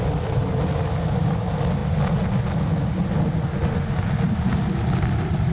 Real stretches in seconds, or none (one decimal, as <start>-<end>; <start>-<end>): 0.0-5.5